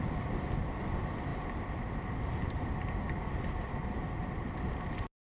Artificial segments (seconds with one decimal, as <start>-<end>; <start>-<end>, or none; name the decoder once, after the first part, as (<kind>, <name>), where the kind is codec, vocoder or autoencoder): none